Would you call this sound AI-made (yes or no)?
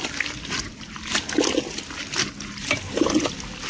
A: no